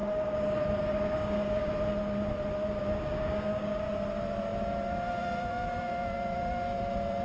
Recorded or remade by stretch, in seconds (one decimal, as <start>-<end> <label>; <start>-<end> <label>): 0.0-1.7 remade; 1.7-2.6 recorded; 2.6-3.9 remade; 3.9-7.2 recorded